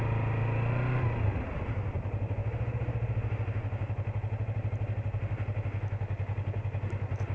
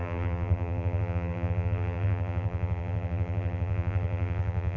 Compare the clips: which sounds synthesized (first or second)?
second